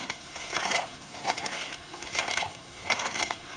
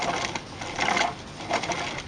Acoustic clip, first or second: second